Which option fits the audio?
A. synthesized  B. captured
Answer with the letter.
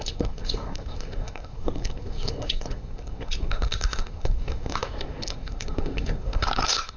A